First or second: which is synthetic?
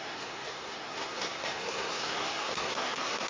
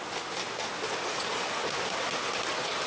first